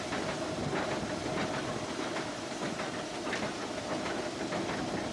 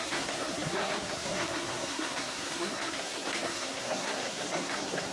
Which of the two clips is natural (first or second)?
first